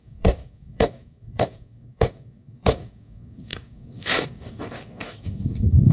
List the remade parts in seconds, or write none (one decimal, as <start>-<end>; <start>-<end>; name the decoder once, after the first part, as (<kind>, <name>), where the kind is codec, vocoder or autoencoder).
0.0-5.9 (codec, DAC)